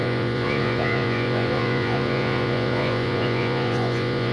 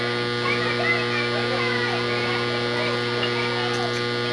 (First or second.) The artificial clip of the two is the first